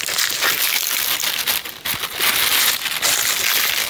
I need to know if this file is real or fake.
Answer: real